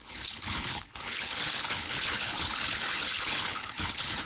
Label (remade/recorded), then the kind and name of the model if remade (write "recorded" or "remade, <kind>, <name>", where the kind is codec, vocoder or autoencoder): remade, codec, HILCodec